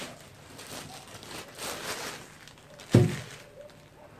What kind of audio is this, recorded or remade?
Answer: recorded